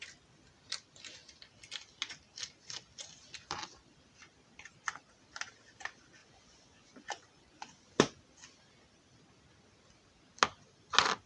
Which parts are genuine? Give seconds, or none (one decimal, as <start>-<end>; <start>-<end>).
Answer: 0.0-6.2; 8.2-11.3